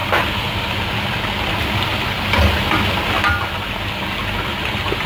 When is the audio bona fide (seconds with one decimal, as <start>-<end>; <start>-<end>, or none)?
0.0-5.1